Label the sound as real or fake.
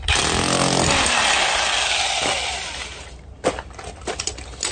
real